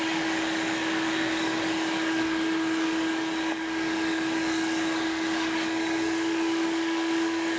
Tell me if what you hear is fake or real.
fake